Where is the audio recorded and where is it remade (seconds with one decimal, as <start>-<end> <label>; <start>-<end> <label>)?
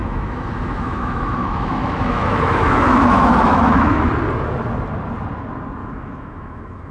0.0-4.1 remade; 4.1-5.8 recorded; 5.8-6.9 remade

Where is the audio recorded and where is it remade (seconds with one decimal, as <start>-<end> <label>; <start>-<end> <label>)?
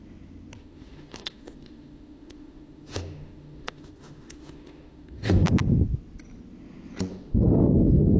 0.0-0.6 recorded; 0.6-5.5 remade; 5.5-7.1 recorded; 7.1-8.2 remade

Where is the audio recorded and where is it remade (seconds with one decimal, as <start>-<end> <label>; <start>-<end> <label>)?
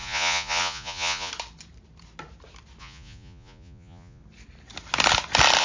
0.0-1.3 remade; 1.3-2.8 recorded; 2.8-4.2 remade; 4.2-5.6 recorded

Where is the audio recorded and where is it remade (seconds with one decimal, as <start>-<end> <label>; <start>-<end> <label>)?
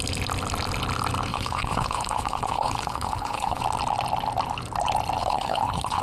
0.0-1.3 recorded; 1.3-3.6 remade; 3.6-5.2 recorded; 5.2-6.0 remade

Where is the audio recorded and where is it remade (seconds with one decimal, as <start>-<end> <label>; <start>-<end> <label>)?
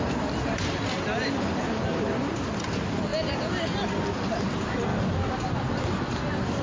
0.0-6.6 recorded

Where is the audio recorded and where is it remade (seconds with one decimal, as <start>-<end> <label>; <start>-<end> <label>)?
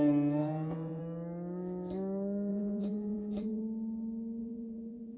0.0-0.4 recorded; 0.4-1.0 remade; 1.0-2.5 recorded; 2.5-3.6 remade; 3.6-4.4 recorded; 4.4-5.2 remade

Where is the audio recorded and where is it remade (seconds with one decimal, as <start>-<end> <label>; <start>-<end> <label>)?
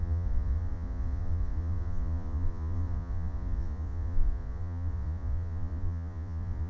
0.0-6.7 remade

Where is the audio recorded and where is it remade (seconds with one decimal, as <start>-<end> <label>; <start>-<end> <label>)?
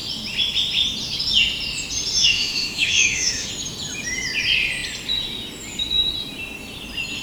0.0-2.2 recorded; 2.2-3.5 remade; 3.5-7.2 recorded